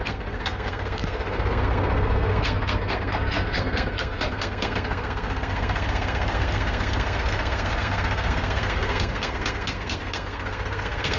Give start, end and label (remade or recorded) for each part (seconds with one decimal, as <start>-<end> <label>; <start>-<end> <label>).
0.0-11.2 remade